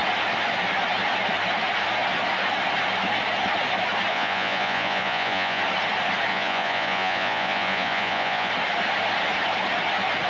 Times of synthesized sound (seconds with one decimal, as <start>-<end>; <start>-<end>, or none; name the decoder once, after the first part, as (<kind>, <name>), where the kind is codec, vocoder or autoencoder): 4.1-5.6 (vocoder, Vocos); 6.3-8.5